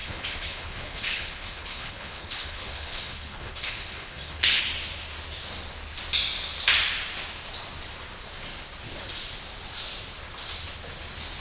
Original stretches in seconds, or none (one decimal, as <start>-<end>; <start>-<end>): 4.6-11.4